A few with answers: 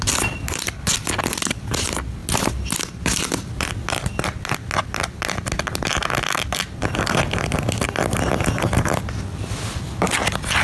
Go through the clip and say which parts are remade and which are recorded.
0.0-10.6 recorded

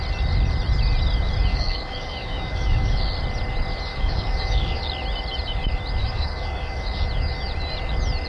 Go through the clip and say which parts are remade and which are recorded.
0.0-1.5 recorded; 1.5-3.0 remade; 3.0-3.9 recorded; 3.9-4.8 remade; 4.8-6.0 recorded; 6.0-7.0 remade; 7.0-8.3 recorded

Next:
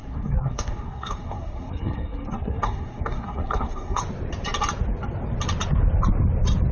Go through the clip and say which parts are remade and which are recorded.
0.0-4.0 remade; 4.0-6.7 recorded